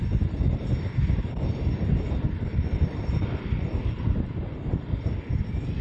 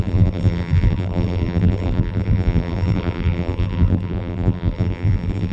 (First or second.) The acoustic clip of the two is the first